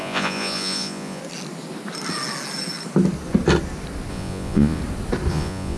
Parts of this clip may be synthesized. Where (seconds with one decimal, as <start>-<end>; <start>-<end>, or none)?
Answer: 0.0-1.2; 4.1-4.8; 5.3-5.8